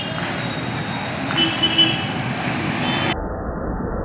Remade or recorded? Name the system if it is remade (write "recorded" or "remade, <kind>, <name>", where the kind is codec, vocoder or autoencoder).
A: recorded